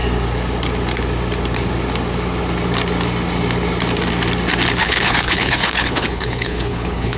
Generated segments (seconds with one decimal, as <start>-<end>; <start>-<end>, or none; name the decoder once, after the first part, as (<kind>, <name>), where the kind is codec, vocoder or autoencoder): 4.8-7.2 (codec, HILCodec)